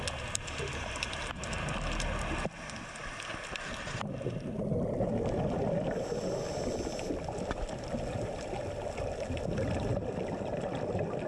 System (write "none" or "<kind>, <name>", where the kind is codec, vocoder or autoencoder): none